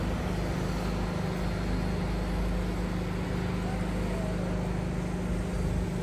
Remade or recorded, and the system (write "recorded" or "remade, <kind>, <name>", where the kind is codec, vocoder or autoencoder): recorded